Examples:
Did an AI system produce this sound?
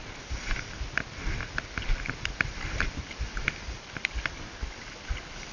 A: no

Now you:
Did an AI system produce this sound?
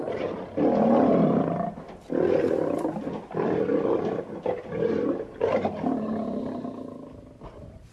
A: no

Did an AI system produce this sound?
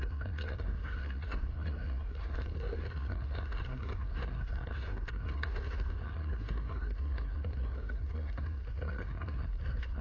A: yes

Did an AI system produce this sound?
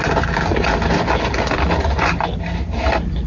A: no